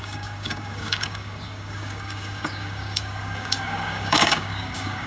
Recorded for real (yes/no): no